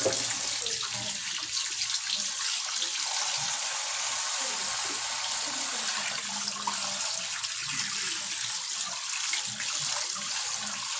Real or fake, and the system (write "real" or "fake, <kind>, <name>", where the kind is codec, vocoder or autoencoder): real